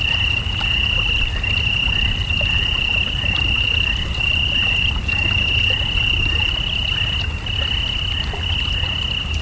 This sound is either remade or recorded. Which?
recorded